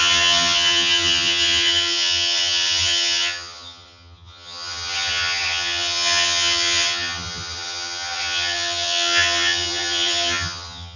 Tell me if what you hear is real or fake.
fake